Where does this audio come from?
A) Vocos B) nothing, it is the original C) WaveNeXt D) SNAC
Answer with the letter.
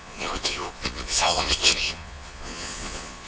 A